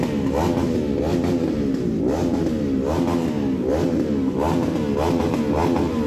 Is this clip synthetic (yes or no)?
no